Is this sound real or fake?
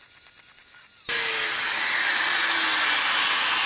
real